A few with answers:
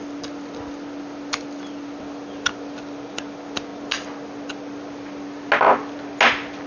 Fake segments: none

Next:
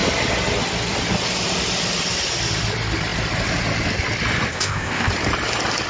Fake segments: 4.5-5.1 (codec, ZipCodec)

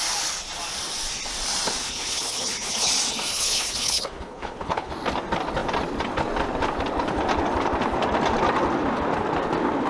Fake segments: 1.8-2.9 (codec, HILCodec); 3.3-4.9

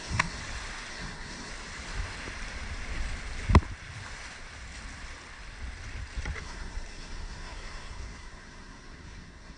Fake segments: 0.0-0.4 (codec, SNAC); 0.9-1.5; 6.4-9.6

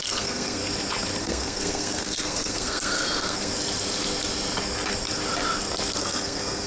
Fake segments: 0.0-0.6 (codec, SNAC); 1.2-3.5; 6.0-6.7

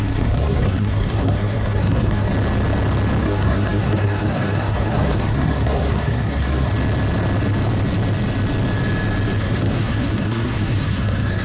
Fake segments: 0.0-2.3 (codec, SNAC); 3.2-6.7; 9.4-11.4